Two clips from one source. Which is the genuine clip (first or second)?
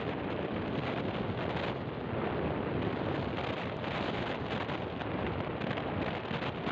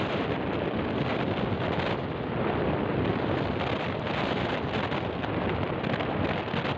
first